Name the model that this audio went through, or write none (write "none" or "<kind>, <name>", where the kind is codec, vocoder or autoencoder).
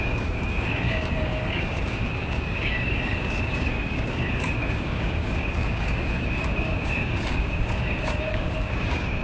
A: codec, DAC